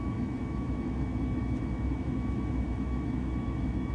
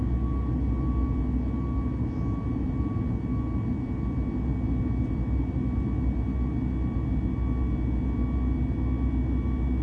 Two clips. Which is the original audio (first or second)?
second